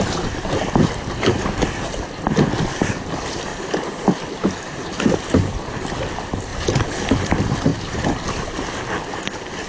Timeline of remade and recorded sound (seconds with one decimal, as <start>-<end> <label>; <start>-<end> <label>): 0.0-3.5 remade; 3.5-5.3 recorded; 5.3-6.5 remade; 6.5-7.1 recorded; 7.1-7.7 remade; 7.7-9.7 recorded